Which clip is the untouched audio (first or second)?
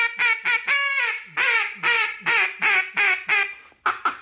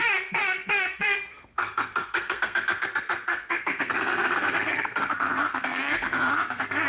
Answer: first